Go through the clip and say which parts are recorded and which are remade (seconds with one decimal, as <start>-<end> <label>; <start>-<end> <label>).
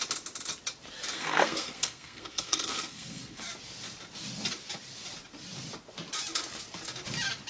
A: 0.0-1.1 recorded; 1.1-3.4 remade; 3.4-7.5 recorded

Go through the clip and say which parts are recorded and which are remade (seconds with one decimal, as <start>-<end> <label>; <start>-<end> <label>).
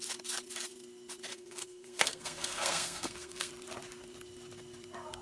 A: 0.0-1.3 recorded; 1.3-3.5 remade; 3.5-5.2 recorded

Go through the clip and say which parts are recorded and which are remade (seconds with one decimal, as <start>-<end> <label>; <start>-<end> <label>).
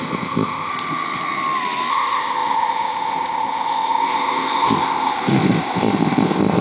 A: 0.0-0.7 remade; 0.7-1.9 recorded; 1.9-6.6 remade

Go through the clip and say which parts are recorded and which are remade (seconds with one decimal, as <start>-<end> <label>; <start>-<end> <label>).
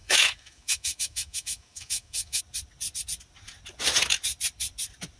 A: 0.0-2.4 remade; 2.4-5.2 recorded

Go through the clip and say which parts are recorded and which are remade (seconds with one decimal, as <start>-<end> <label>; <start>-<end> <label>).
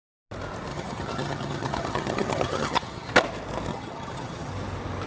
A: 0.0-0.7 recorded; 0.7-3.1 remade; 3.1-3.7 recorded; 3.7-4.5 remade; 4.5-5.1 recorded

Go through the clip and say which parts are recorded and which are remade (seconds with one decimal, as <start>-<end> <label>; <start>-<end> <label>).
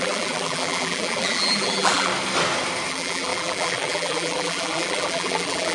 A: 0.0-2.1 remade; 2.1-2.9 recorded; 2.9-5.7 remade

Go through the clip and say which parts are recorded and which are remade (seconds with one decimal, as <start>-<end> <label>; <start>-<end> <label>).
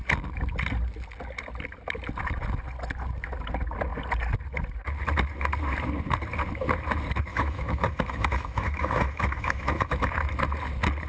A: 0.0-7.3 recorded; 7.3-10.1 remade; 10.1-11.1 recorded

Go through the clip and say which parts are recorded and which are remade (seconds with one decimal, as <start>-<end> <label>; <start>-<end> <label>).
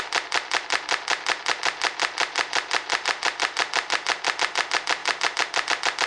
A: 0.0-6.1 remade